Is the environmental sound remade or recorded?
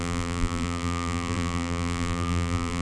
remade